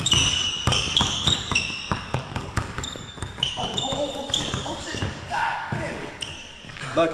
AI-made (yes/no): yes